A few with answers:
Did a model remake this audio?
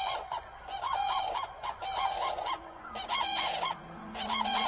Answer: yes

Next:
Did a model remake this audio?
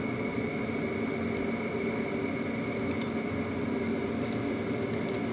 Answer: no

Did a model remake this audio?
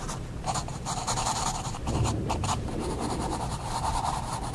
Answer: yes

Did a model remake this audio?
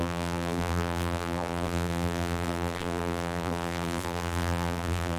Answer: yes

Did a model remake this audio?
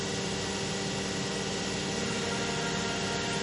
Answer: no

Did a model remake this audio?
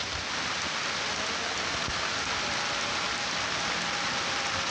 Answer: no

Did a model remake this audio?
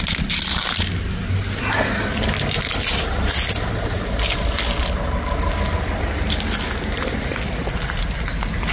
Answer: no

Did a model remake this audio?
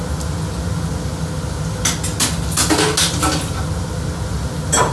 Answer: no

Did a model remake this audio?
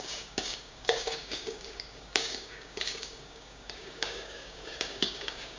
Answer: yes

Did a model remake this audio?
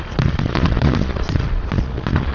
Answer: yes